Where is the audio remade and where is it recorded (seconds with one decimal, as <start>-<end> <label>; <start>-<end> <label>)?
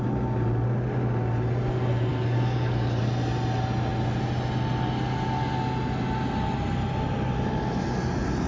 0.0-2.1 recorded; 2.1-3.0 remade; 3.0-8.5 recorded